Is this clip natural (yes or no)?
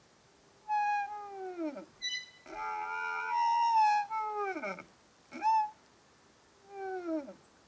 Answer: yes